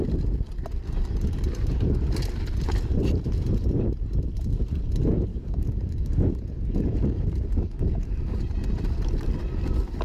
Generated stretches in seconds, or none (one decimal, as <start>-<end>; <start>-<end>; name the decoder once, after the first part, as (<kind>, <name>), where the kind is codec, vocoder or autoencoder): 5.3-8.4 (codec, DAC)